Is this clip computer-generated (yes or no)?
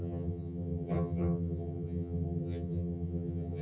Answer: yes